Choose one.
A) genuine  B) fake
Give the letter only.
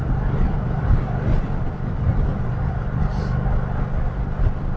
A